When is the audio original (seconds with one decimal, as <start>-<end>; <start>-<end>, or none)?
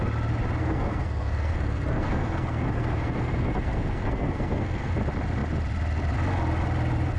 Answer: 0.0-0.6; 4.9-7.2